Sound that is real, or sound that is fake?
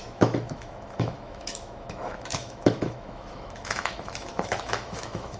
fake